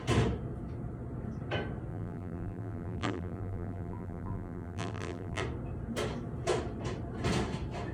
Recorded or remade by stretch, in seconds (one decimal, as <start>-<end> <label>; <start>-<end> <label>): 0.0-1.9 recorded; 1.9-5.4 remade; 5.4-7.9 recorded